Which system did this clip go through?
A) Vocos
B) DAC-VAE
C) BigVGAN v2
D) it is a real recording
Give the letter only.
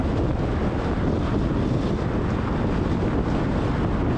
D